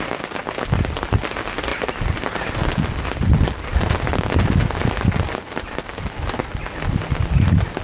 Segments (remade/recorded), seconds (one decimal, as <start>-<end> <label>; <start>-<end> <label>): 0.0-7.8 recorded